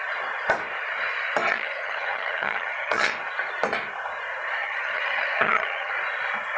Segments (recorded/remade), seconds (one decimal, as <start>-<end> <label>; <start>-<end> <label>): 0.0-1.5 recorded; 1.5-3.1 remade; 3.1-4.6 recorded; 4.6-5.9 remade; 5.9-6.6 recorded